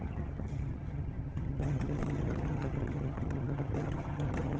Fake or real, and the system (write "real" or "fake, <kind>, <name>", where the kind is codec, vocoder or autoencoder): fake, vocoder, HiFi-GAN